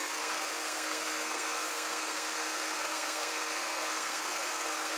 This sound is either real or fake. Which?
fake